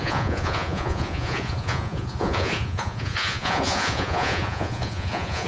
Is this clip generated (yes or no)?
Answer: yes